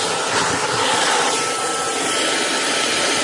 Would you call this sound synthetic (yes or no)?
no